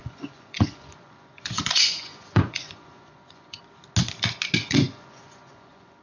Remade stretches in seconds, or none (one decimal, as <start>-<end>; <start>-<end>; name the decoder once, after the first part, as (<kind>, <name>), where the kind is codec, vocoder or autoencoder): 0.0-3.6 (vocoder, Vocos); 4.6-6.0